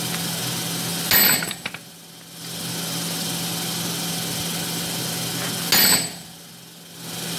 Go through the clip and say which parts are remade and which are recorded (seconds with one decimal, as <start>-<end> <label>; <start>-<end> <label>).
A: 0.0-7.4 recorded